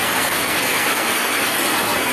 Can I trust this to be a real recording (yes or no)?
no